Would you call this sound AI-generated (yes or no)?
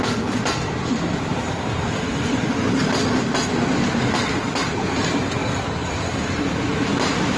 yes